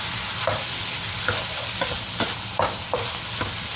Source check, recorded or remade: recorded